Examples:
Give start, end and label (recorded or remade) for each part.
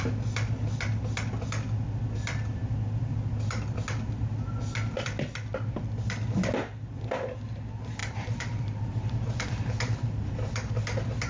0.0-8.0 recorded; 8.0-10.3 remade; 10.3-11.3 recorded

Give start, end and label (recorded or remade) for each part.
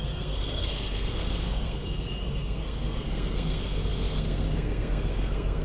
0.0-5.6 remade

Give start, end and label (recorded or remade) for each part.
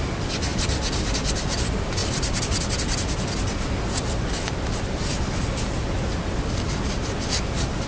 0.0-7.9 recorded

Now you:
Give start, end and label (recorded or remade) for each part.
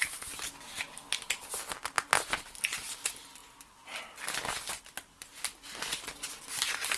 0.0-7.0 recorded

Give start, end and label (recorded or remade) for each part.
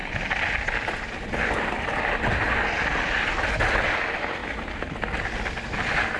0.0-6.2 recorded